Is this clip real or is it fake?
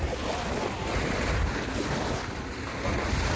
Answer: real